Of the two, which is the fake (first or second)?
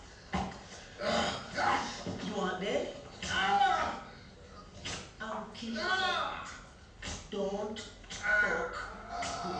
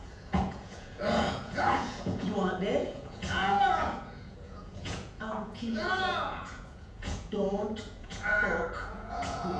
second